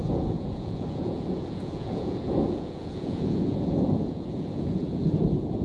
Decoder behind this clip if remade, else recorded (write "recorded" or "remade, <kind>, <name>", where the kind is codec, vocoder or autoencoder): remade, vocoder, Vocos